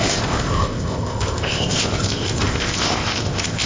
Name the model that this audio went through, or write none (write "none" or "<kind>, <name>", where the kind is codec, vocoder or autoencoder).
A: codec, ZipCodec